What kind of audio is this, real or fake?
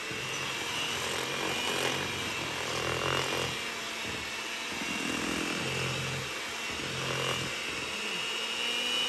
real